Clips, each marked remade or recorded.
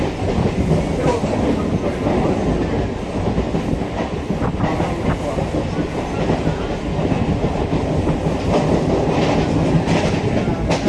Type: recorded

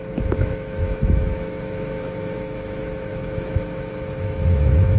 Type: remade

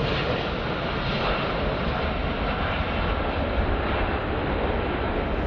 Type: recorded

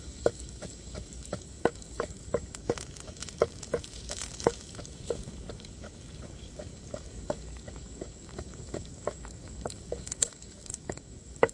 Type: remade